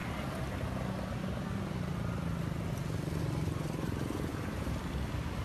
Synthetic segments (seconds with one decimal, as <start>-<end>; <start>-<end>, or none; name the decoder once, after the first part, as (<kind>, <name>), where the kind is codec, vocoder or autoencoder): 3.2-5.4 (vocoder, BigVGAN v2)